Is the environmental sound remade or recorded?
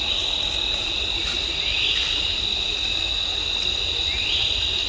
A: recorded